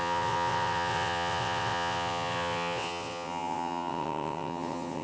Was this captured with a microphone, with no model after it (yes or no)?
no